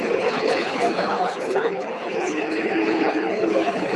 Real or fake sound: fake